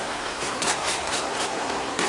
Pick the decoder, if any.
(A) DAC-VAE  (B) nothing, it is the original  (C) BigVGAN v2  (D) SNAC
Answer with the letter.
D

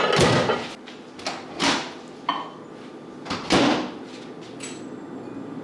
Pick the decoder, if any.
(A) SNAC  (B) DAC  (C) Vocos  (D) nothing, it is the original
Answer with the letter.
D